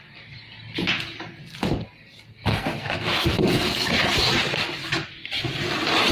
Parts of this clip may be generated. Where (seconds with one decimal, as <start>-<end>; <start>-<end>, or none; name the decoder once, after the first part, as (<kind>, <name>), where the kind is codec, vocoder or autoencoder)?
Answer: 2.5-3.8 (codec, SNAC)